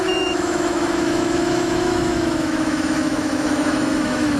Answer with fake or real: fake